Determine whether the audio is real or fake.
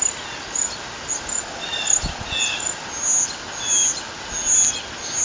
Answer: real